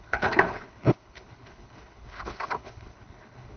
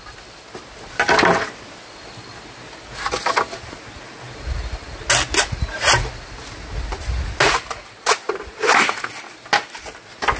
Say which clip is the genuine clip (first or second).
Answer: second